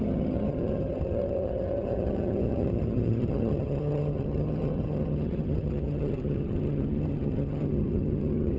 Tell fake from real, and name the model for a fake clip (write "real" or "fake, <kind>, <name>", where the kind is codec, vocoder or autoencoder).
fake, vocoder, HiFi-GAN